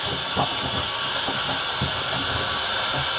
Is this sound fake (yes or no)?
no